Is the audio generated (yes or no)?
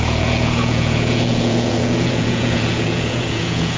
yes